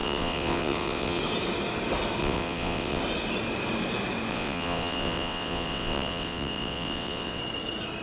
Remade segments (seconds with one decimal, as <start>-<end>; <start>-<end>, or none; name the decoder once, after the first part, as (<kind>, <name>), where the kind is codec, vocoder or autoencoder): 0.0-1.2 (vocoder, WaveNeXt); 2.2-3.0; 4.3-7.4